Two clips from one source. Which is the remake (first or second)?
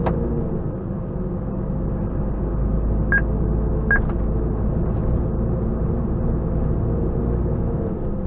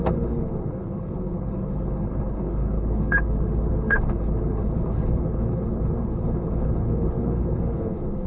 second